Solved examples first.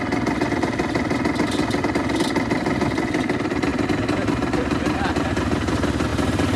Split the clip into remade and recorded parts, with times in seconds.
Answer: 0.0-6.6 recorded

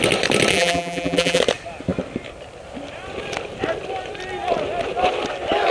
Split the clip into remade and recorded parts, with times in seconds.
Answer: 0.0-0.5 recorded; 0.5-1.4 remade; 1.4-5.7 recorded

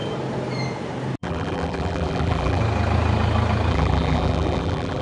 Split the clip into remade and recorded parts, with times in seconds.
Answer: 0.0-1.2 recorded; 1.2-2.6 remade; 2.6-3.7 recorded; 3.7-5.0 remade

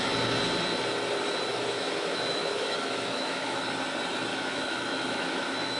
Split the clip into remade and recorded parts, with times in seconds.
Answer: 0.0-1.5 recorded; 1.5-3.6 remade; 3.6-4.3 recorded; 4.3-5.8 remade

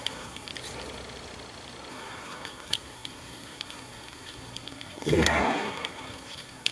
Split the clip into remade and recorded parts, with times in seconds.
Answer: 0.0-0.5 remade; 0.5-1.9 recorded; 1.9-6.7 remade

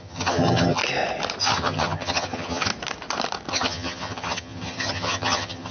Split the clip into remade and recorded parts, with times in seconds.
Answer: 0.0-0.8 remade; 0.8-1.4 recorded; 1.4-2.7 remade; 2.7-3.5 recorded; 3.5-5.7 remade